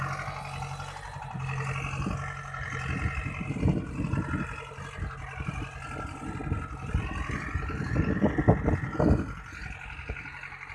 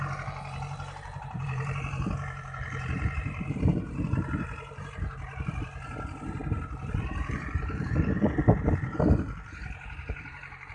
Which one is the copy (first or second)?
second